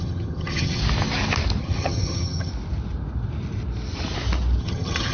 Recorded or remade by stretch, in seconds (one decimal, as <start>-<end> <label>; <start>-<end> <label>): 0.0-0.8 remade; 0.8-1.6 recorded; 1.6-2.5 remade; 2.5-4.6 recorded; 4.6-5.1 remade